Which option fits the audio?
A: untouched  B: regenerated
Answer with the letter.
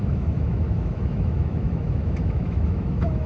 B